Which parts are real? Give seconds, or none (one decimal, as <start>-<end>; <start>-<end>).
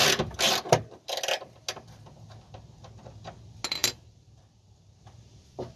0.0-3.8